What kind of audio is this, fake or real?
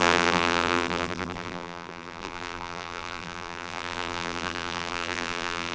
fake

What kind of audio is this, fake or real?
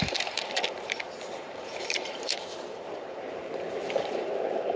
fake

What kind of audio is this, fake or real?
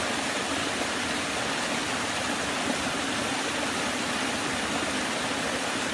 real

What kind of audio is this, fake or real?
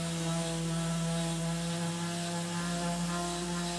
real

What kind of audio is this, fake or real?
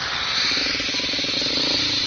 real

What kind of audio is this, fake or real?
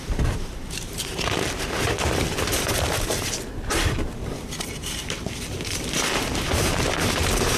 fake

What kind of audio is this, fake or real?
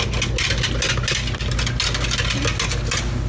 real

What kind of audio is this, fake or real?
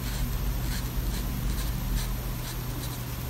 real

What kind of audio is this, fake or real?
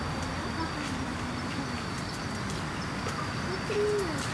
real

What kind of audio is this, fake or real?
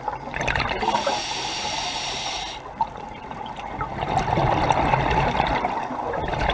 real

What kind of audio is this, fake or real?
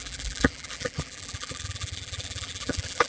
fake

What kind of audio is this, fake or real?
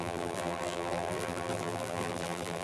fake